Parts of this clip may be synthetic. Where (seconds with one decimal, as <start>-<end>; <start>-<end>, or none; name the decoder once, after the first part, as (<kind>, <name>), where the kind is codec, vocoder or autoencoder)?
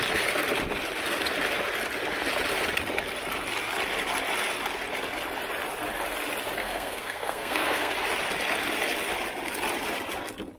6.6-7.9 (codec, SNAC)